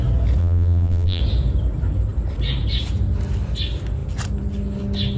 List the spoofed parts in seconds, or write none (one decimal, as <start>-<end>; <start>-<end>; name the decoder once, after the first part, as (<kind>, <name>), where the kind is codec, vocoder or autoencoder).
0.4-1.2 (vocoder, BigVGAN v2)